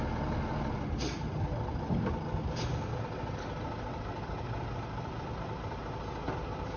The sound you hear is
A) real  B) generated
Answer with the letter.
A